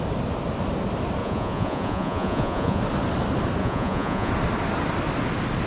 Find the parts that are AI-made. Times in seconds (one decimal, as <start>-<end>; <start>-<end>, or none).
1.2-2.8; 3.6-4.3